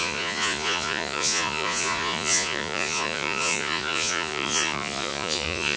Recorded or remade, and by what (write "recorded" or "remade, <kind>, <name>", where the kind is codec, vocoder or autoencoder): remade, vocoder, Vocos